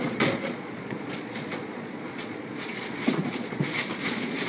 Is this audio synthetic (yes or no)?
yes